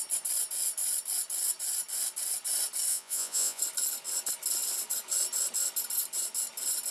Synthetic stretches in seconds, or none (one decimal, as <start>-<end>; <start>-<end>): 2.9-3.6